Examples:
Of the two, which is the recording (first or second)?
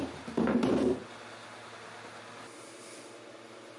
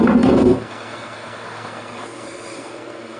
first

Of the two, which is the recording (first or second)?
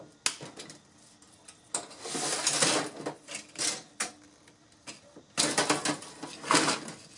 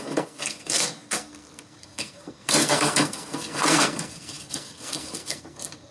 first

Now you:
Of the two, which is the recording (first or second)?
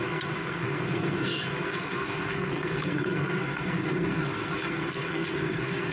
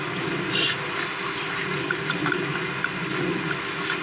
second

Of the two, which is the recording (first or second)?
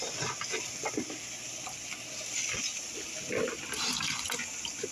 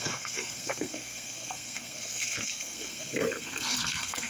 first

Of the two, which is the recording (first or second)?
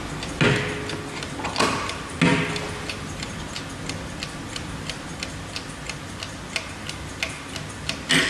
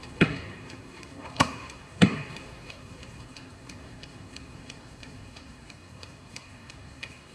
first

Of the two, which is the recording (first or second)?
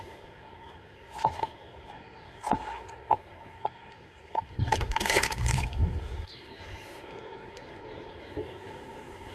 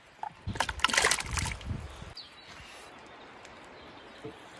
second